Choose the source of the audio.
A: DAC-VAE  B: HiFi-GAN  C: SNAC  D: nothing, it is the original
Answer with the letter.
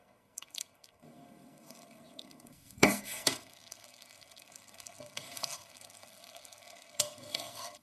C